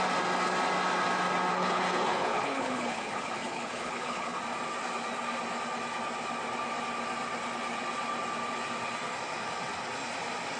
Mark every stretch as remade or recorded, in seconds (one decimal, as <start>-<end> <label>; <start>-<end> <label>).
0.0-1.5 recorded; 1.5-4.4 remade; 4.4-10.6 recorded